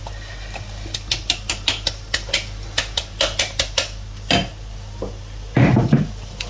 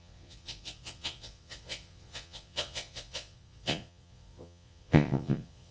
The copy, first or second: second